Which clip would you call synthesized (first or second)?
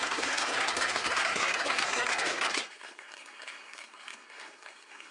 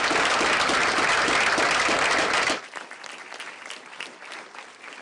first